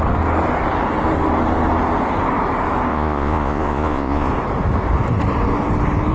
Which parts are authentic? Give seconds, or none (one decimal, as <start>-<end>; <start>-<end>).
0.0-2.9; 4.3-6.1